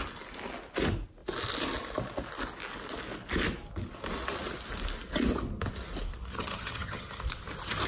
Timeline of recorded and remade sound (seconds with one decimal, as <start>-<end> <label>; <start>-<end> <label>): 0.0-6.3 recorded; 6.3-7.2 remade; 7.2-7.9 recorded